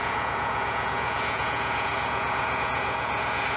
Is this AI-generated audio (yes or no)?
yes